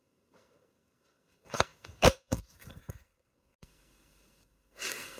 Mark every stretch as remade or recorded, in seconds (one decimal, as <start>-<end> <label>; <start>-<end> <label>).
0.0-5.2 remade